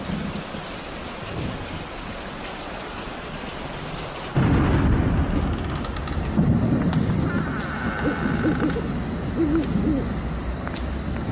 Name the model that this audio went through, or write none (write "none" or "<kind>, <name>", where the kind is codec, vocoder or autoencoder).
none